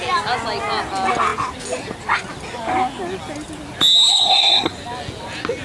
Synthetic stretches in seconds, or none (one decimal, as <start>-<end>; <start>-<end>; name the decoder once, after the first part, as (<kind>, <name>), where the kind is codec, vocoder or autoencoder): 4.1-4.7 (codec, SNAC)